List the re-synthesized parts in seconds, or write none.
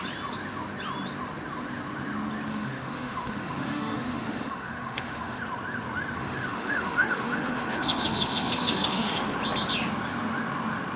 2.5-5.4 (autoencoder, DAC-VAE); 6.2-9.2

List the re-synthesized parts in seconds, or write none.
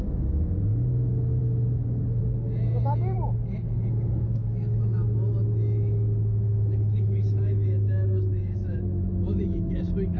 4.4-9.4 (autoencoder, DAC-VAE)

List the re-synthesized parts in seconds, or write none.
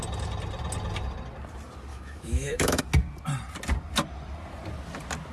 1.9-2.8 (autoencoder, DAC-VAE)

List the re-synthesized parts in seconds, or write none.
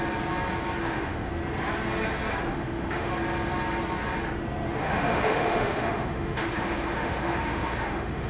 0.8-1.3 (autoencoder, DAC-VAE); 2.5-3.1; 4.8-8.3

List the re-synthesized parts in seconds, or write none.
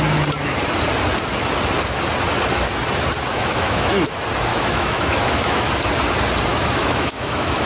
3.3-3.9 (autoencoder, DAC-VAE); 4.5-5.7; 6.5-7.7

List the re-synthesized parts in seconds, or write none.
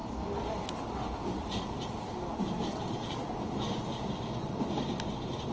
none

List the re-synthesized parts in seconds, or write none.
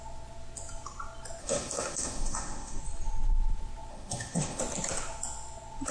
1.4-2.8 (autoencoder, DAC-VAE); 3.9-4.6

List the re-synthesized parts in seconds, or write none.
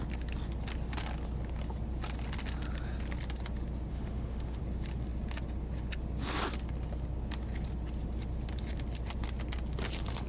3.9-4.6 (autoencoder, DAC-VAE)